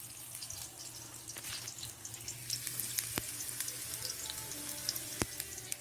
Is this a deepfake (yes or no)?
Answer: no